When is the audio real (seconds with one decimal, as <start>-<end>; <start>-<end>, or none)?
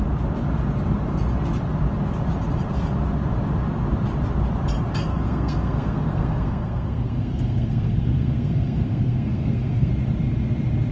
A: 0.0-5.1; 9.9-10.9